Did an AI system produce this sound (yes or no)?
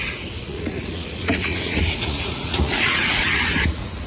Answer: yes